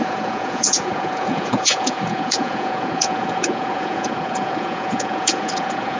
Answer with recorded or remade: remade